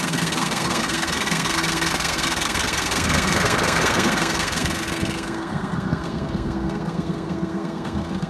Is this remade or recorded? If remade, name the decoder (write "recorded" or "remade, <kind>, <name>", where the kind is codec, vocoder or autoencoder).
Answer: remade, codec, SNAC